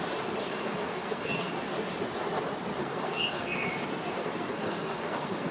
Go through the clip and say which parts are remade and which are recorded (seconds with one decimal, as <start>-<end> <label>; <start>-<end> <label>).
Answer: 0.0-0.4 recorded; 0.4-1.5 remade; 1.5-2.8 recorded; 2.8-3.7 remade; 3.7-4.2 recorded; 4.2-5.5 remade